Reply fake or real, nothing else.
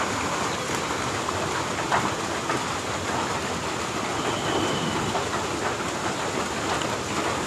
fake